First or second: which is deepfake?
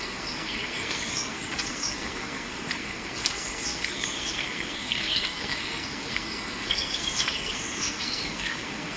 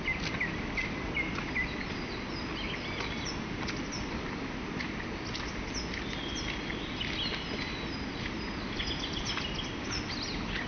first